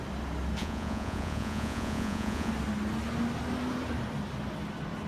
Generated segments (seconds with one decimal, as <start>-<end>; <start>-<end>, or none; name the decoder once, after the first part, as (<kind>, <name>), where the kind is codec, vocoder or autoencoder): 0.6-2.5 (vocoder, Vocos)

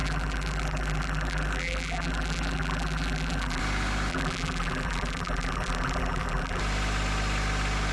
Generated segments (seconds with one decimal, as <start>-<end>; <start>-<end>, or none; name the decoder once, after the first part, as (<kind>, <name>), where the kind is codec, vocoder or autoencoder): 0.0-3.6 (vocoder, BigVGAN v2); 4.1-6.6